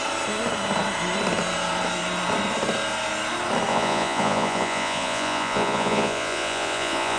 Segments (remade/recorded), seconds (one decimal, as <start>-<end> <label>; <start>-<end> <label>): 0.0-3.7 recorded; 3.7-7.2 remade